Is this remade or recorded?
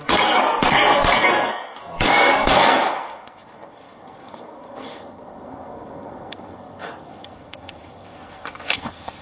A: remade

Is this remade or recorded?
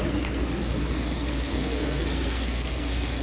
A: remade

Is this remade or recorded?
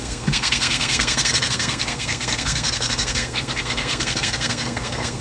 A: remade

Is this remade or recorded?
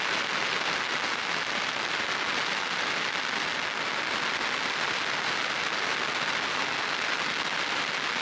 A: recorded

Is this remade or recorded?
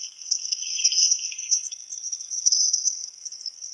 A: remade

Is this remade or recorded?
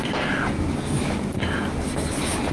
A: recorded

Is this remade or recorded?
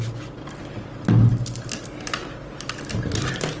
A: recorded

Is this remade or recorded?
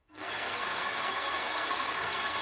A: remade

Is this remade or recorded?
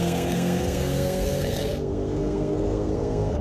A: remade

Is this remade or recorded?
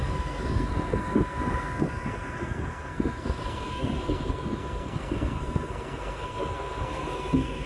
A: remade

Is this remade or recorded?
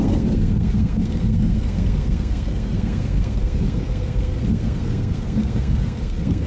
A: remade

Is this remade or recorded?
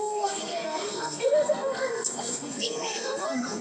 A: remade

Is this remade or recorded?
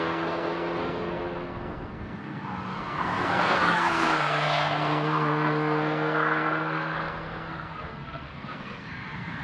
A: remade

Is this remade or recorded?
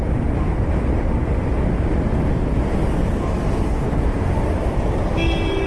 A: recorded